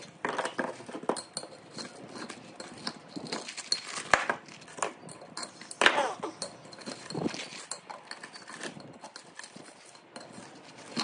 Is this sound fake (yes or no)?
no